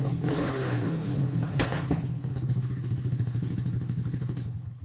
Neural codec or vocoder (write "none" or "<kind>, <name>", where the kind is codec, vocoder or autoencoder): codec, HILCodec